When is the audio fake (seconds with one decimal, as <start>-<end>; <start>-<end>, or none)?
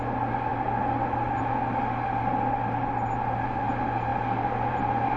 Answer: none